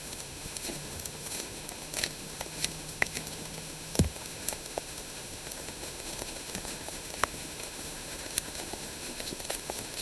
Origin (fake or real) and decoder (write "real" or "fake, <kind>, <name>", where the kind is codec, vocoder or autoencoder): fake, autoencoder, DAC-VAE